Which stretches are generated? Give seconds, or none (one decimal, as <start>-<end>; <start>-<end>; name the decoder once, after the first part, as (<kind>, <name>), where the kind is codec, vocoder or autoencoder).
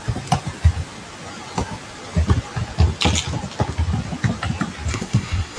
4.9-5.6 (codec, SNAC)